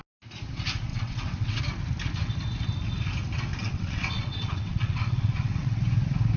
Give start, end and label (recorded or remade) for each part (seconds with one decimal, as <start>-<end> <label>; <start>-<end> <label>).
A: 0.0-0.9 recorded; 0.9-1.6 remade; 1.6-3.6 recorded; 3.6-5.8 remade; 5.8-6.4 recorded